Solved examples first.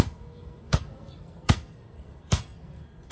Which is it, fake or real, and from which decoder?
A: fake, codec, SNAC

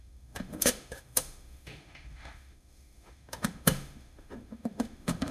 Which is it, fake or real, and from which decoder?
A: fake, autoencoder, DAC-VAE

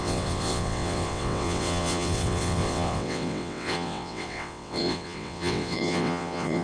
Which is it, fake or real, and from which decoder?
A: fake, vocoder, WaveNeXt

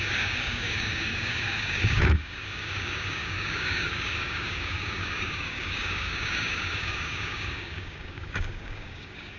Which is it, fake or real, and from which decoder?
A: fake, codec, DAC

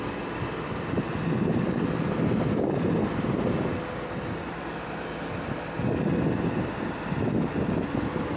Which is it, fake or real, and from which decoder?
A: real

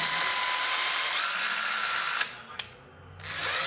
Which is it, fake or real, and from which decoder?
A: real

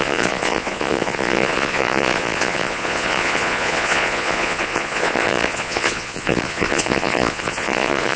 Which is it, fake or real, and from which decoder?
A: fake, vocoder, Vocos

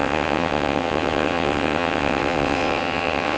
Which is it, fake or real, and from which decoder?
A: fake, vocoder, WaveNeXt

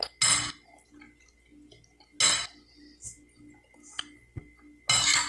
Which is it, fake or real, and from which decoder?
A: real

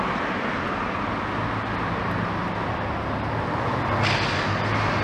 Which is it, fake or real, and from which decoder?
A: real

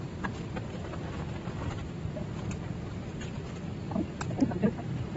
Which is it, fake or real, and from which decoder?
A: real